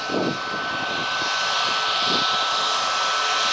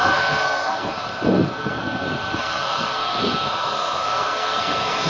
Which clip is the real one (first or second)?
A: first